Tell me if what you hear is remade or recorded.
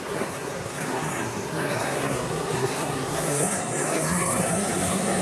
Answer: remade